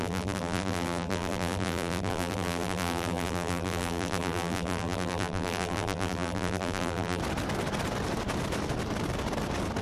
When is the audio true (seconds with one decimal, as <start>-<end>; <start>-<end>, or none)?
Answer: 7.2-9.8